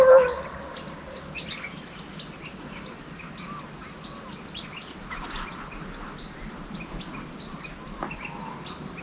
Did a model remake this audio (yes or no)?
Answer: no